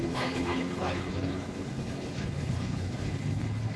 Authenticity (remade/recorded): remade